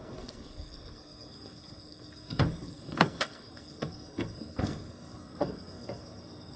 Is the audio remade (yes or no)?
yes